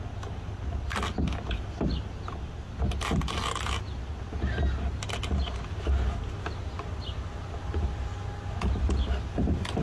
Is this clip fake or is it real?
real